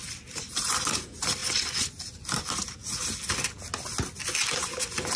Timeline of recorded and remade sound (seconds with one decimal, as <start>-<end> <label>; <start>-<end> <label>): 0.0-5.2 recorded